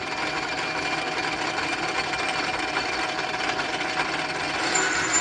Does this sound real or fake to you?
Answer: real